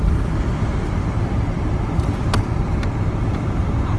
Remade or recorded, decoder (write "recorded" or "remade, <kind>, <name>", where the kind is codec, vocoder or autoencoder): recorded